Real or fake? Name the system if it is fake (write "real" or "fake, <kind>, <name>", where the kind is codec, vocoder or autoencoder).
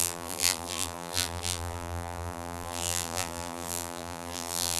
fake, vocoder, BigVGAN v2